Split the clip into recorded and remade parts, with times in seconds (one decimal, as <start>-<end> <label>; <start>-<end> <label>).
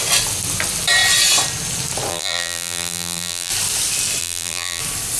0.0-2.1 recorded; 2.1-3.5 remade; 3.5-4.2 recorded; 4.2-4.8 remade; 4.8-5.2 recorded